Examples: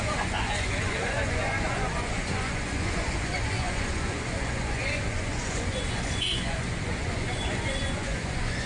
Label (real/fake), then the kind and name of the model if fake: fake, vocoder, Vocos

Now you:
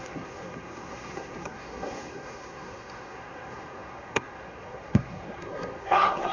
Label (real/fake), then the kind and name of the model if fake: fake, codec, SNAC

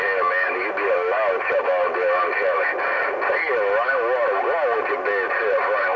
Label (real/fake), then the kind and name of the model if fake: real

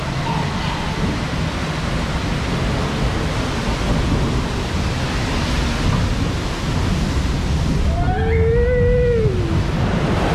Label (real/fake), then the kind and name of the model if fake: real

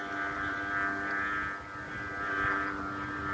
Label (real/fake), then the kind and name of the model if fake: real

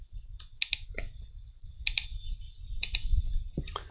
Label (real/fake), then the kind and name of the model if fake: real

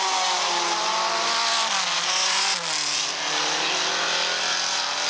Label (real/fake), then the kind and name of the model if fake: real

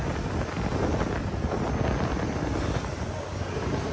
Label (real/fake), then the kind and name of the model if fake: real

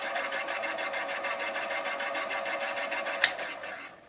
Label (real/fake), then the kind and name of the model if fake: real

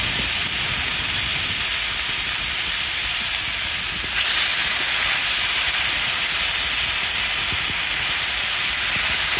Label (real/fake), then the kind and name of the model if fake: real